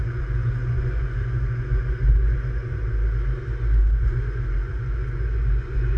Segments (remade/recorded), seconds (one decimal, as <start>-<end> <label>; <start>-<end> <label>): 0.0-2.8 remade; 2.8-3.8 recorded; 3.8-6.0 remade